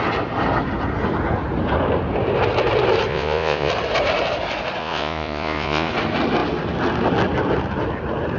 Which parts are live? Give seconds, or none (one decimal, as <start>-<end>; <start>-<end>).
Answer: 0.0-3.1; 3.7-4.8; 5.9-8.4